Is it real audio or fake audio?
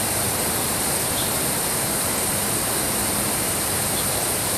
fake